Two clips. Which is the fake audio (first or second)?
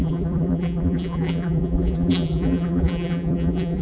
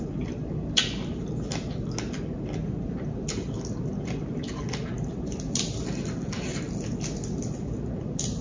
first